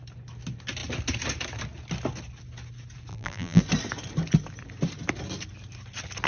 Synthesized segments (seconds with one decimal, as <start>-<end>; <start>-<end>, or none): 3.1-3.6